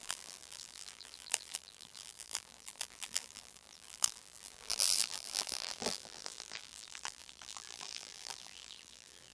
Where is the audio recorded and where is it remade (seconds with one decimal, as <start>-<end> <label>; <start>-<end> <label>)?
0.0-9.3 remade